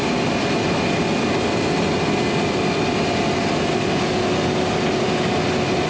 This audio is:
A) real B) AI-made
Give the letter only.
A